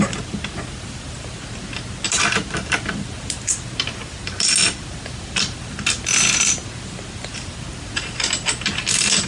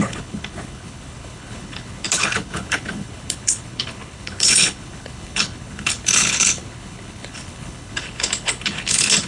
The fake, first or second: second